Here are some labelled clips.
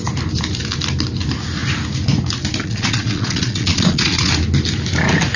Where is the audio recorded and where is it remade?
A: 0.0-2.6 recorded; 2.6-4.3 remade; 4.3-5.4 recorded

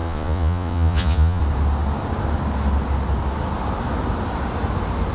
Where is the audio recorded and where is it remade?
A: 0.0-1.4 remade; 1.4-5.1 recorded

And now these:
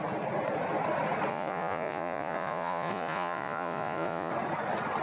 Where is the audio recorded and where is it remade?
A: 0.0-1.3 recorded; 1.3-4.3 remade; 4.3-5.0 recorded

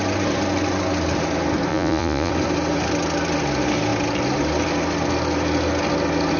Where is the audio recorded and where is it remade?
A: 0.0-1.7 recorded; 1.7-2.3 remade; 2.3-6.4 recorded

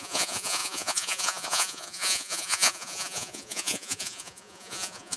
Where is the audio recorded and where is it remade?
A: 0.0-5.2 remade

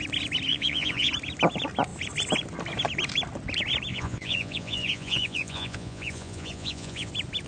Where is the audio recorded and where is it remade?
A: 0.0-0.5 recorded; 0.5-1.1 remade; 1.1-3.9 recorded; 3.9-7.1 remade; 7.1-7.5 recorded

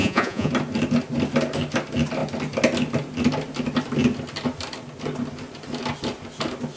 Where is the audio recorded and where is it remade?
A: 0.0-0.5 remade; 0.5-6.8 recorded

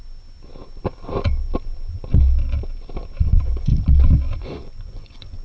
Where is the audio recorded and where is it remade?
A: 0.0-3.2 recorded; 3.2-3.7 remade; 3.7-4.4 recorded; 4.4-5.4 remade